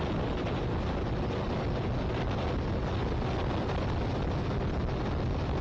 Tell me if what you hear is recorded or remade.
recorded